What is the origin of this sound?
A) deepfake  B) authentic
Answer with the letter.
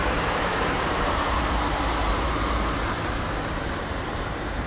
A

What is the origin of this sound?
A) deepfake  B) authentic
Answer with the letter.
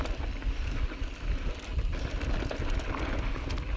B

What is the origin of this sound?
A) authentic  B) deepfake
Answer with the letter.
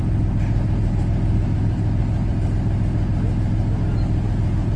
A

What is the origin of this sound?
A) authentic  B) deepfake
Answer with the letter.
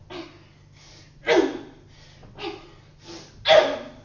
A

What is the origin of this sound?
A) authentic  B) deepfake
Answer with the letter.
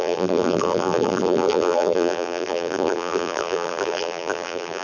B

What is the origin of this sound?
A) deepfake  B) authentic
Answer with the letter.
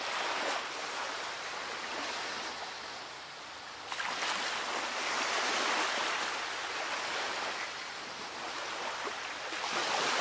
B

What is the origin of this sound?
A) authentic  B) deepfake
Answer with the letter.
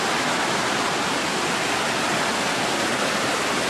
A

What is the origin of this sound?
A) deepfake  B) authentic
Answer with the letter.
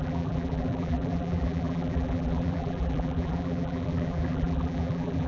A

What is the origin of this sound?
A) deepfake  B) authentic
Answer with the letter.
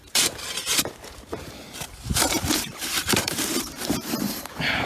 A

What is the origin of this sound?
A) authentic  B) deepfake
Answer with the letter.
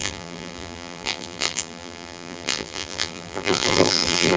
B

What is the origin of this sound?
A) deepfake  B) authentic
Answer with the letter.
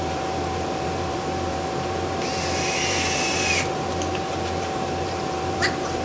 A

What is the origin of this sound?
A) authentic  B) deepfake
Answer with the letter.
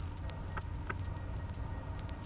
A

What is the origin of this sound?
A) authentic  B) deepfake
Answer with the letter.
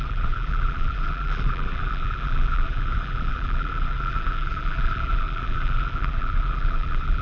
B